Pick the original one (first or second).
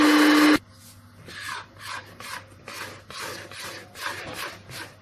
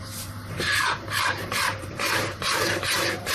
first